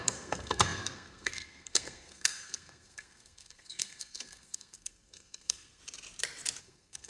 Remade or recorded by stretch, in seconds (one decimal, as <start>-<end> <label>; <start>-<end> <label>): 0.0-5.8 remade; 5.8-6.6 recorded; 6.6-7.1 remade